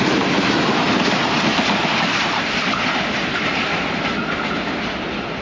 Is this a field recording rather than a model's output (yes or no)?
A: yes